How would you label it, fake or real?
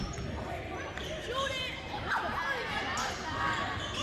real